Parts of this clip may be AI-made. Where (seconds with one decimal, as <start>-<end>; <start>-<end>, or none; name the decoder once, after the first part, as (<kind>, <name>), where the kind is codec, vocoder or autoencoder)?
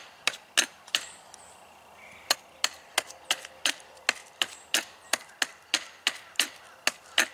0.7-1.5 (vocoder, BigVGAN v2); 4.2-5.3